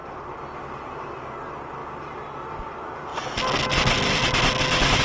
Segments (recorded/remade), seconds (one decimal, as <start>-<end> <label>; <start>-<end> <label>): 0.0-0.8 remade; 0.8-1.8 recorded; 1.8-2.7 remade; 2.7-5.0 recorded

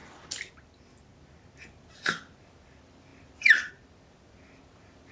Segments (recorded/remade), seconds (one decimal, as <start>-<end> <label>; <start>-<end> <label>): 0.0-5.1 recorded

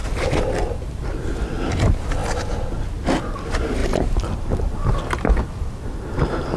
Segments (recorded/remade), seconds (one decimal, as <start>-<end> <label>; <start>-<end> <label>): 0.0-2.2 remade; 2.2-3.3 recorded; 3.3-3.8 remade; 3.8-6.6 recorded

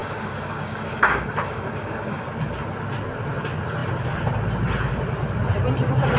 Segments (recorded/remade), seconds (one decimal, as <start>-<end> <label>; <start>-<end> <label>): 0.0-2.3 remade; 2.3-6.2 recorded

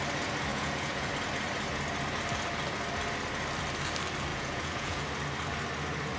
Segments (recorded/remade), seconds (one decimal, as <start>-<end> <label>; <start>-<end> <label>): 0.0-0.5 recorded; 0.5-1.1 remade; 1.1-4.3 recorded; 4.3-5.0 remade; 5.0-6.2 recorded

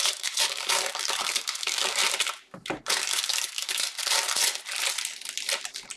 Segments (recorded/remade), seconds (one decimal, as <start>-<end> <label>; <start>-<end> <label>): 0.0-2.0 remade; 2.0-2.9 recorded; 2.9-3.9 remade; 3.9-6.0 recorded

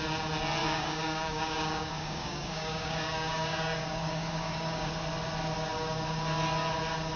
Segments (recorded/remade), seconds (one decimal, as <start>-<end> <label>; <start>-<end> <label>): 0.0-0.6 recorded; 0.6-4.9 remade; 4.9-7.2 recorded

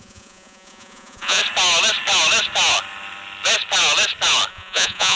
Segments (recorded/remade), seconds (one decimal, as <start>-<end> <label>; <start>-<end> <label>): 0.0-1.4 remade; 1.4-4.5 recorded; 4.5-5.2 remade